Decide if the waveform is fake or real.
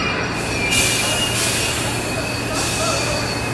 real